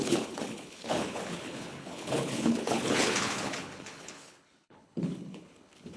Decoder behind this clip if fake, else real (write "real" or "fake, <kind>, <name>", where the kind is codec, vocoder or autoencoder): fake, codec, HILCodec